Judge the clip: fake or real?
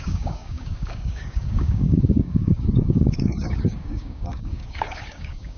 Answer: fake